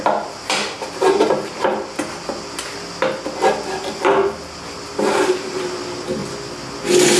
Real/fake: real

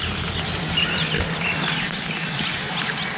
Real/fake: real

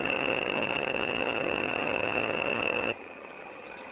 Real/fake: fake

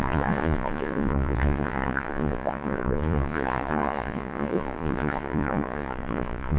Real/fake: fake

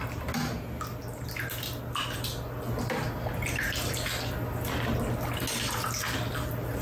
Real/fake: real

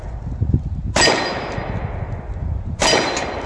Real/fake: real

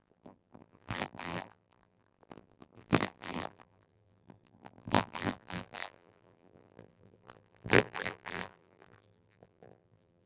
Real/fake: fake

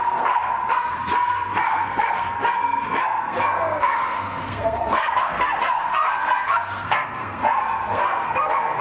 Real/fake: fake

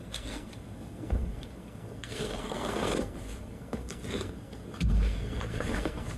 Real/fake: fake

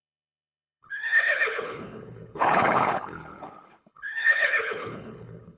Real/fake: fake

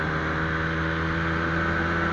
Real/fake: real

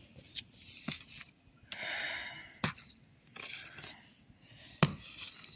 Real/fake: real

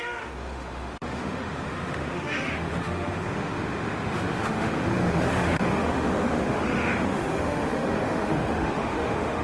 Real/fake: fake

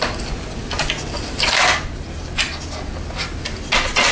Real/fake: real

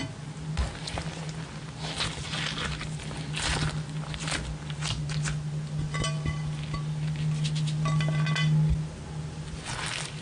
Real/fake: real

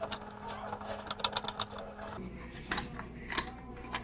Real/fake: real